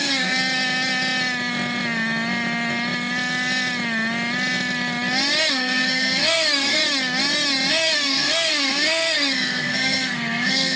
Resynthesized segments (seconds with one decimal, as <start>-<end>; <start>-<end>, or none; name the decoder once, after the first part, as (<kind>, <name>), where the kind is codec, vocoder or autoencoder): 0.0-0.4 (codec, SNAC); 5.5-6.8; 7.7-10.8